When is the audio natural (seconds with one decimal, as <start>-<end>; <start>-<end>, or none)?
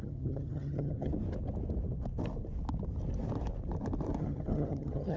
1.1-4.2